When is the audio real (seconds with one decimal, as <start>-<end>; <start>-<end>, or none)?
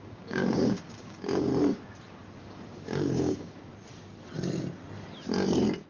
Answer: 1.5-2.4; 3.7-5.9